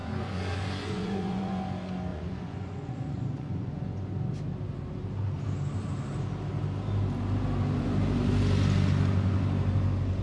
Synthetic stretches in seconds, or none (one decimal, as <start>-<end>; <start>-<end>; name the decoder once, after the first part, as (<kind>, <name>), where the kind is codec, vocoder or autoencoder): 0.0-1.6 (vocoder, Vocos); 2.1-4.1